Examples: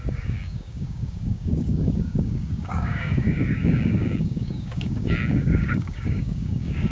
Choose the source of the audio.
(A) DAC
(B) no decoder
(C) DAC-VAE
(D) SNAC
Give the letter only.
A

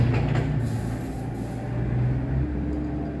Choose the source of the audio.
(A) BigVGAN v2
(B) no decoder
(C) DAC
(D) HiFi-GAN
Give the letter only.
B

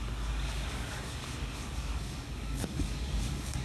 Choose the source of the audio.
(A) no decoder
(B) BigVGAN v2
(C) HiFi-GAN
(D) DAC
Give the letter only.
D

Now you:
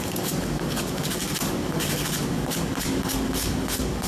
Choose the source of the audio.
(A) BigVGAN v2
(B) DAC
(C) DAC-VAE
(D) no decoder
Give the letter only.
B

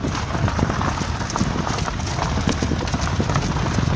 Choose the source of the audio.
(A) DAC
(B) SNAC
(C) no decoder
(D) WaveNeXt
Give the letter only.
C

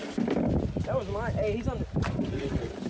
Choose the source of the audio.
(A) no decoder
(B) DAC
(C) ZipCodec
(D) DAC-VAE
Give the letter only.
A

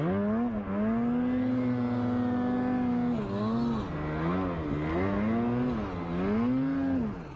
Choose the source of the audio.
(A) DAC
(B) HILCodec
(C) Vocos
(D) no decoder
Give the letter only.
D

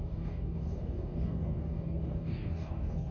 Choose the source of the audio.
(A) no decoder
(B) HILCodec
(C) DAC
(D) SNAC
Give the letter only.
C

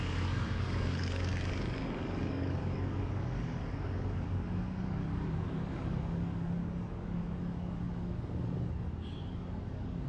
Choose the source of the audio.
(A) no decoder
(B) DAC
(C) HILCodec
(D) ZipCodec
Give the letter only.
B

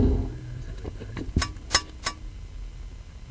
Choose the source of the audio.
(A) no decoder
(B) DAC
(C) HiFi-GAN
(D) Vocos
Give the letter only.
A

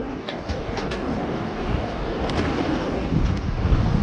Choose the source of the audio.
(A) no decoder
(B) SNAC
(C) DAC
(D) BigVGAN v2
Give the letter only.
C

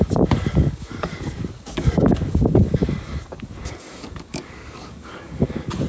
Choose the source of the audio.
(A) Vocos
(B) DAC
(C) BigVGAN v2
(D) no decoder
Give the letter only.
B